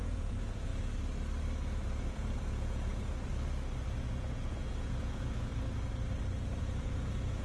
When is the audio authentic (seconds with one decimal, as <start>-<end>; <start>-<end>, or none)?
0.7-1.7; 3.3-4.0; 5.5-6.6